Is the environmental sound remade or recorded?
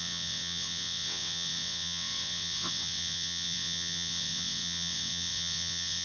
remade